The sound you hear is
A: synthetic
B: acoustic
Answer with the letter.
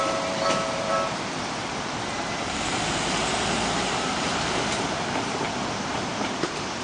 A